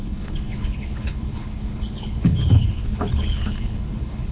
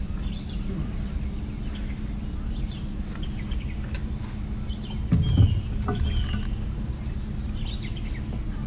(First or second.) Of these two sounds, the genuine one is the second